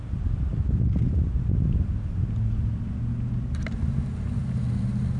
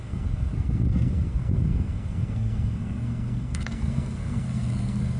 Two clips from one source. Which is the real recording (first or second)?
first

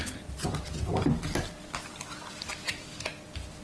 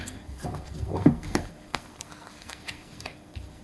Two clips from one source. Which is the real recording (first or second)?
first